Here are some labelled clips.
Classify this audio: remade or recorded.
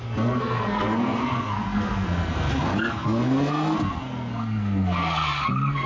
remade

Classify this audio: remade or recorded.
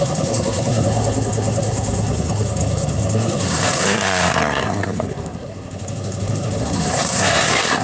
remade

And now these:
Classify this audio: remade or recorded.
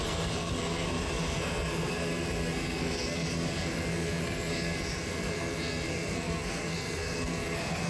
remade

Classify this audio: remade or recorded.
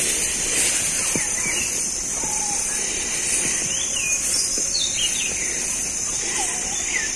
recorded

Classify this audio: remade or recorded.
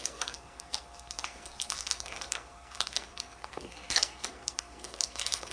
remade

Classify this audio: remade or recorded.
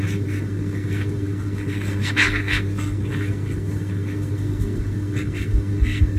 remade